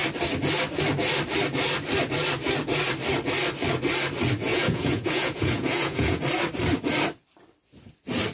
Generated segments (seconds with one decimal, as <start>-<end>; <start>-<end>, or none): 4.5-6.2